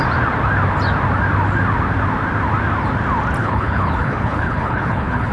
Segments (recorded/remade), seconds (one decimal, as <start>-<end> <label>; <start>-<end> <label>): 0.0-3.4 recorded; 3.4-5.3 remade